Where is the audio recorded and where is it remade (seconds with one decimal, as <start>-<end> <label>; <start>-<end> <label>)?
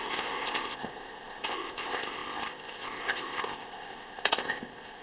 0.0-5.0 remade